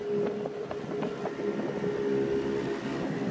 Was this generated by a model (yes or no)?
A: no